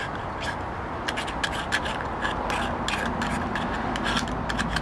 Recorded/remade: recorded